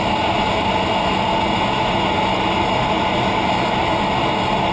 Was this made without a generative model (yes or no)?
yes